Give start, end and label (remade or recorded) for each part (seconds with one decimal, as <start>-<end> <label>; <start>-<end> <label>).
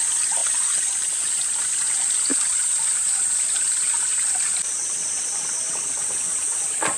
0.0-7.0 recorded